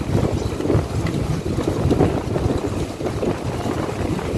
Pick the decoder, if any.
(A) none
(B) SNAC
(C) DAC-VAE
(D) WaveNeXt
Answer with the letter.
A